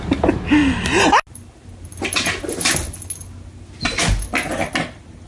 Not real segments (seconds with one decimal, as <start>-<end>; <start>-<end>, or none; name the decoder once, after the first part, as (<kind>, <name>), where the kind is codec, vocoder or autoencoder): none